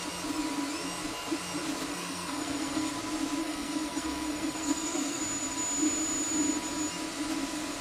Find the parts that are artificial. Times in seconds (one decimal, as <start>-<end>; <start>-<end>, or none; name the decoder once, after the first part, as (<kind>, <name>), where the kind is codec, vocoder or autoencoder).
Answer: 1.9-2.9 (codec, SNAC); 3.4-5.2